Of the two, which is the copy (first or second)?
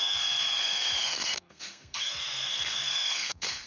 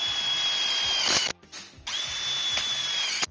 first